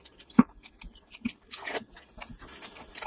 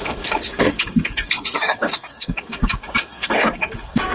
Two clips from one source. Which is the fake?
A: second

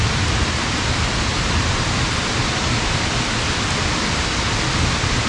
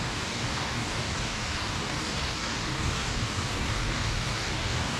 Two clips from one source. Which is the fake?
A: second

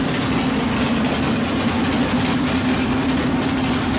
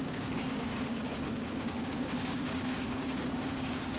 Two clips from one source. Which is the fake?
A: second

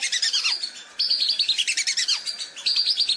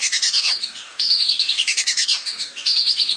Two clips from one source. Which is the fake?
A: second